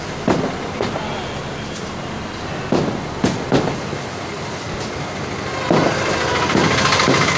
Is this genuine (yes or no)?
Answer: yes